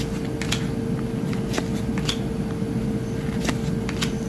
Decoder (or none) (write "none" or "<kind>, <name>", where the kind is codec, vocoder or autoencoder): none